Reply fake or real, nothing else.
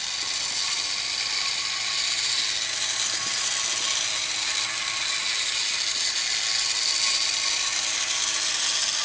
real